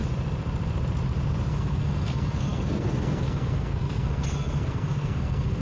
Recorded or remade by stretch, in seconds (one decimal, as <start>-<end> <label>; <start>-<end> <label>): 0.0-1.5 recorded; 1.5-5.6 remade